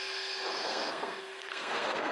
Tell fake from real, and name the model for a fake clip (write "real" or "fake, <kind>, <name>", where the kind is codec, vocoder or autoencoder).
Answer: fake, codec, SNAC